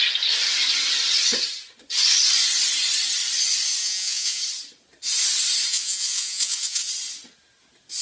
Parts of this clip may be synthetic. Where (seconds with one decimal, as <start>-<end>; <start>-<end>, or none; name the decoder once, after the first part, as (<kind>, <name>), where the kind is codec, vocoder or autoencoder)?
3.8-4.4 (vocoder, Vocos); 5.7-6.9